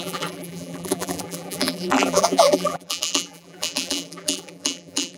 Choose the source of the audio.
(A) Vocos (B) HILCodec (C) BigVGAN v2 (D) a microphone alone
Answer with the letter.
C